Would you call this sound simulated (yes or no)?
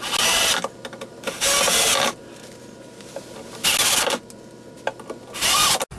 no